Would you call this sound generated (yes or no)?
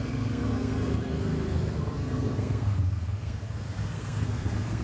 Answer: yes